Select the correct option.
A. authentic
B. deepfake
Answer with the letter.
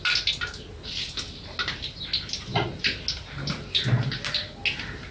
A